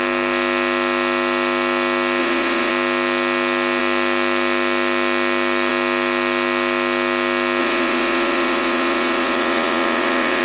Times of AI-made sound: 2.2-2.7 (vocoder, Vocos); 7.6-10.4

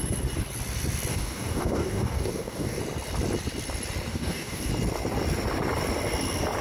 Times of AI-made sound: 1.1-2.8 (codec, DAC); 4.1-4.7

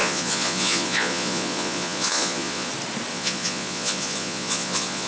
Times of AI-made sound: 0.0-2.7 (vocoder, Vocos); 3.1-5.1

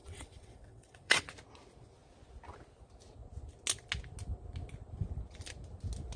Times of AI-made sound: 0.0-1.3 (vocoder, WaveNeXt)

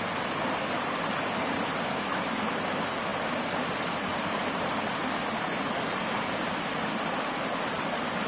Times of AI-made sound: none